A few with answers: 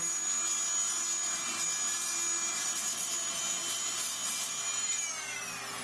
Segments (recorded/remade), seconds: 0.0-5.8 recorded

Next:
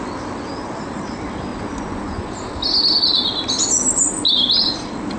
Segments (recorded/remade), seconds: 0.0-1.5 recorded; 1.5-2.3 remade; 2.3-5.2 recorded

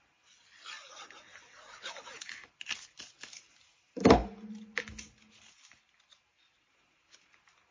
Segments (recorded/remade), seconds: 0.0-7.7 recorded

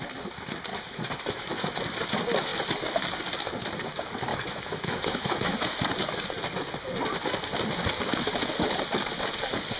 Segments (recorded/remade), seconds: 0.0-0.7 recorded; 0.7-1.8 remade; 1.8-4.3 recorded; 4.3-5.7 remade; 5.7-9.8 recorded

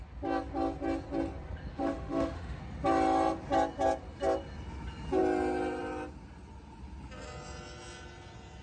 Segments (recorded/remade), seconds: 0.0-1.7 recorded; 1.7-2.6 remade; 2.6-8.6 recorded

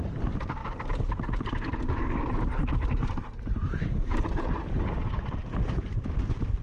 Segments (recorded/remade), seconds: 0.0-5.4 recorded; 5.4-6.1 remade; 6.1-6.6 recorded

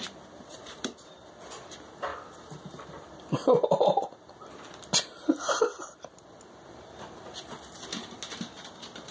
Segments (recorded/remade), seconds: 0.0-9.1 recorded